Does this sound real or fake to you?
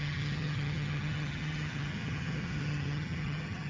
fake